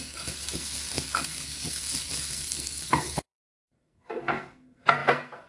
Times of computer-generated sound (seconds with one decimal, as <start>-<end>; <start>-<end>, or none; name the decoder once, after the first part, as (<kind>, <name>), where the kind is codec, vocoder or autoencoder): 0.0-5.5 (codec, SNAC)